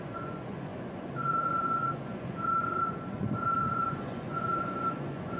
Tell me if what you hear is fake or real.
fake